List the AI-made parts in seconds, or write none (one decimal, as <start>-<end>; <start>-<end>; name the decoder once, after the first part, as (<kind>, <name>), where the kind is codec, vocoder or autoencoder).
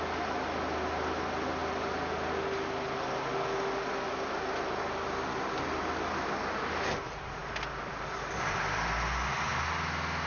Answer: none